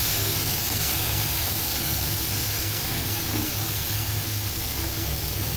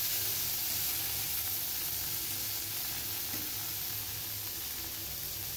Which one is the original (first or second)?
second